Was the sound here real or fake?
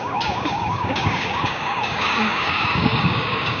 fake